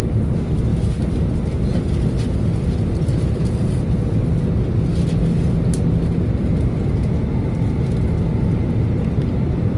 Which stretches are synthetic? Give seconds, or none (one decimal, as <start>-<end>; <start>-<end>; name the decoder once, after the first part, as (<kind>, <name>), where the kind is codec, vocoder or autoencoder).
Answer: none